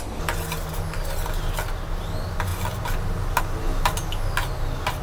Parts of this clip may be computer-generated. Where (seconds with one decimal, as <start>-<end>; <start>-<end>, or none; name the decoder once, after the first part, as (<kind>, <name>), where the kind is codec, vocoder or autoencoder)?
none